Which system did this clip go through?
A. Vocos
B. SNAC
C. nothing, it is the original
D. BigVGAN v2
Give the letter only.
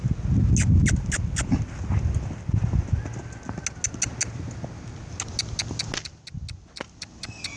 C